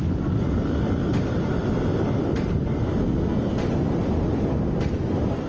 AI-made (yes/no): no